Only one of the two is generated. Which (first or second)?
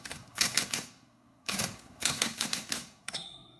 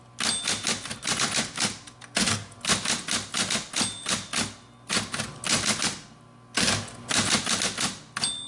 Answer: first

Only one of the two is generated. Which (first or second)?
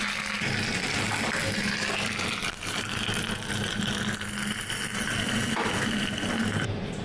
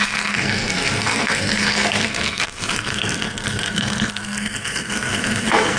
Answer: second